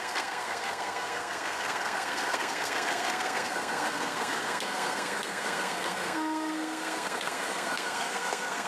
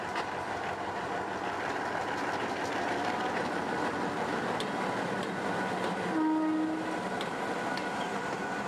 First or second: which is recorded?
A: second